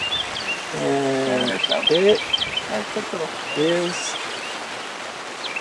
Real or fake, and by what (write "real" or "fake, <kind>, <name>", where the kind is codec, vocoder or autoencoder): real